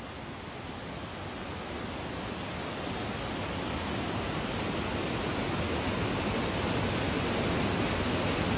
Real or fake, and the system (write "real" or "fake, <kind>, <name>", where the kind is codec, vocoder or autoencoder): real